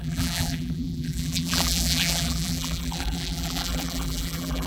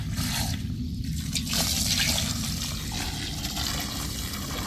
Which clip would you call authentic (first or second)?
second